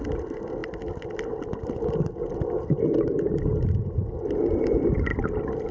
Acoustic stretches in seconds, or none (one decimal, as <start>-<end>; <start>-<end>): 0.0-5.7